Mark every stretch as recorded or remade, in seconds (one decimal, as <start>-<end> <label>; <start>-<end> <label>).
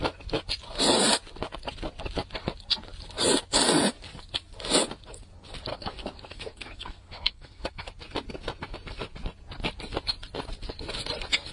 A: 0.0-5.7 recorded; 5.7-7.9 remade; 7.9-11.5 recorded